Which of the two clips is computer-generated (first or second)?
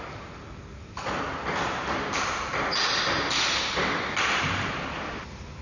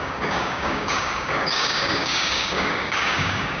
second